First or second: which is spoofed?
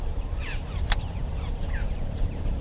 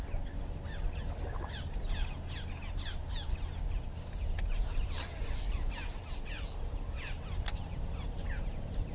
first